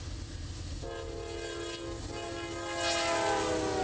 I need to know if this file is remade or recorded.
recorded